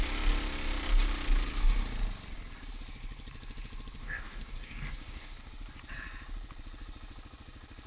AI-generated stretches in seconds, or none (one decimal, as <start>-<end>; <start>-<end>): 4.0-5.5